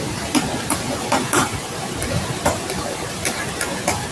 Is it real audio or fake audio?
fake